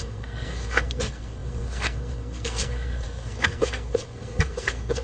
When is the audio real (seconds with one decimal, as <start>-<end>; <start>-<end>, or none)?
none